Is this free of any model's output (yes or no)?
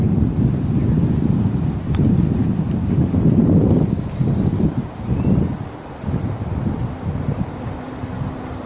no